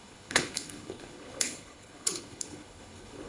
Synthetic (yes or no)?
yes